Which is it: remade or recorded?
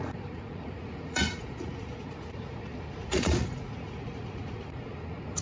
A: remade